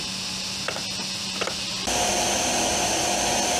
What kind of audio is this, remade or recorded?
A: recorded